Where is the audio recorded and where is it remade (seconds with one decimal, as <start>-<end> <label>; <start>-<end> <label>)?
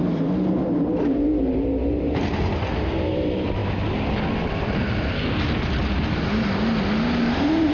0.0-3.6 remade; 3.6-7.2 recorded; 7.2-7.7 remade